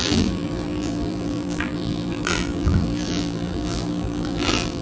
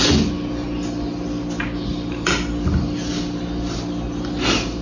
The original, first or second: second